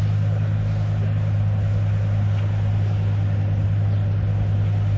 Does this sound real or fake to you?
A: real